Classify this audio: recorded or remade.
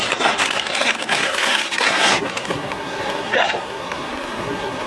remade